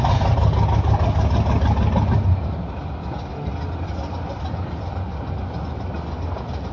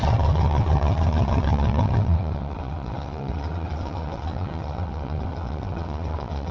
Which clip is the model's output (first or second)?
second